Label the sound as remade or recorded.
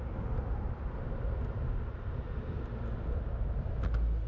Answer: recorded